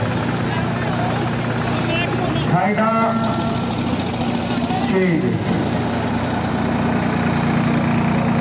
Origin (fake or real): real